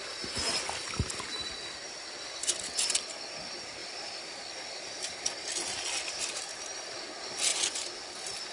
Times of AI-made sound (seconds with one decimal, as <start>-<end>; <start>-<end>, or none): 3.8-5.2; 7.5-8.5